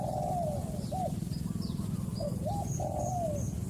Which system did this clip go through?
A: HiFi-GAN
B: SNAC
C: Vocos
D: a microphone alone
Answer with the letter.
D